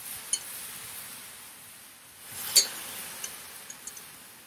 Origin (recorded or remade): recorded